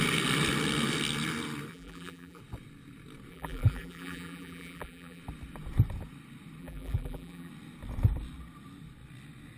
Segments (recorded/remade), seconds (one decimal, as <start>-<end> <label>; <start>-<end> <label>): 0.0-1.7 recorded; 1.7-2.4 remade; 2.4-3.3 recorded; 3.3-5.2 remade; 5.2-6.6 recorded; 6.6-7.5 remade; 7.5-9.6 recorded